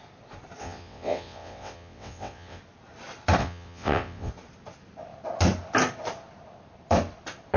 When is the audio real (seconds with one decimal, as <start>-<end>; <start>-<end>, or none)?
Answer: 0.0-0.6; 2.6-3.4; 4.3-7.6